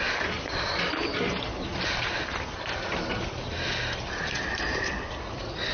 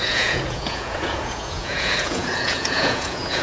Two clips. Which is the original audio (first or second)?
first